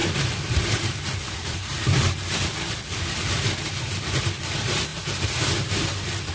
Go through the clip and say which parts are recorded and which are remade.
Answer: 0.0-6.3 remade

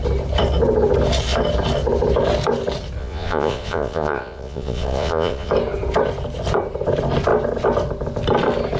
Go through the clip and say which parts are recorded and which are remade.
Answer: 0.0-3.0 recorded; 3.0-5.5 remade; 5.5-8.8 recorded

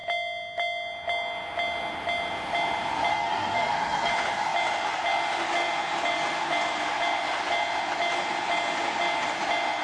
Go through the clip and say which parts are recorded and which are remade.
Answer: 0.0-3.1 recorded; 3.1-4.1 remade; 4.1-9.8 recorded

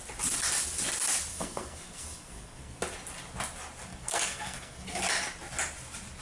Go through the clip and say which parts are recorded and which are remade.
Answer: 0.0-1.3 recorded; 1.3-2.8 remade; 2.8-3.9 recorded; 3.9-5.0 remade; 5.0-6.2 recorded